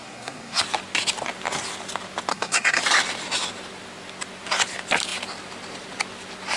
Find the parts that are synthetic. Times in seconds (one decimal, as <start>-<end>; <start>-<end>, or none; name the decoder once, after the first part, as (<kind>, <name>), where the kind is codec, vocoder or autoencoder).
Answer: 0.0-0.6 (codec, SNAC); 2.3-2.8